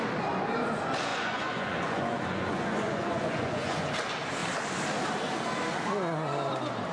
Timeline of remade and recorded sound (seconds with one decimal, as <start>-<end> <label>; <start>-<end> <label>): 0.0-1.1 recorded; 1.1-3.9 remade; 3.9-6.9 recorded